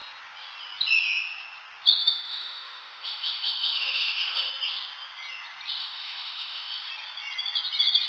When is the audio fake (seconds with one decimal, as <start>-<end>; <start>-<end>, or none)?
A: 2.0-4.5; 5.8-6.9